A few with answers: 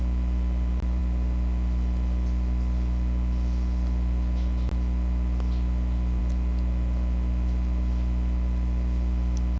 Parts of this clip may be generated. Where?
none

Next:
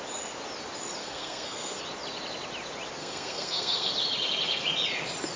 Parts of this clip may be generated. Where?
1.0-1.8 (codec, SNAC); 3.0-3.9

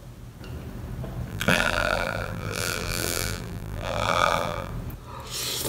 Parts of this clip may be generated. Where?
1.3-4.7 (vocoder, BigVGAN v2)

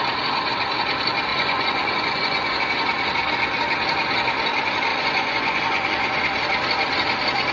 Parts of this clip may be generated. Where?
1.3-2.6 (vocoder, Vocos); 4.9-6.2

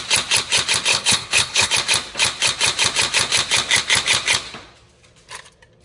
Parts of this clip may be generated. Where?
0.9-1.7 (codec, HILCodec)

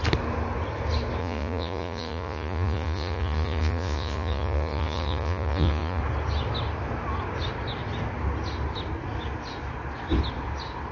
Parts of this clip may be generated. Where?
1.2-6.0 (vocoder, Vocos)

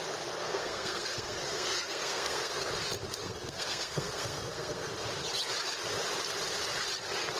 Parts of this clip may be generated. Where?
0.4-2.7 (codec, SNAC); 3.2-4.9

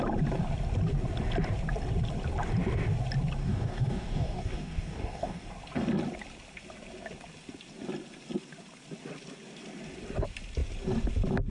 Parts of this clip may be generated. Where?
3.4-5.5 (codec, DAC)